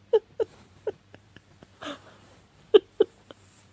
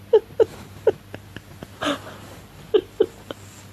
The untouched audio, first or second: second